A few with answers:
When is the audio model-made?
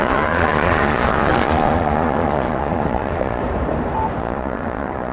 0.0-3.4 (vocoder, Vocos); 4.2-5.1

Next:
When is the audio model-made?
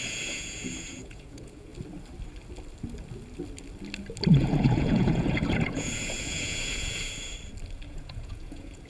0.0-1.7 (vocoder, Vocos); 4.3-7.3; 7.9-8.9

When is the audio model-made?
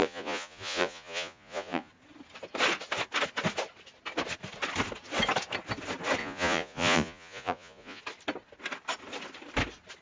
0.0-1.9 (vocoder, Vocos); 6.2-8.0